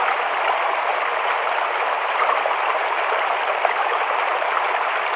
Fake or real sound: real